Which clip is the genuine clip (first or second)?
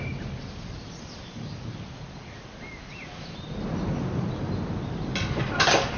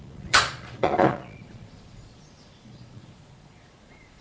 first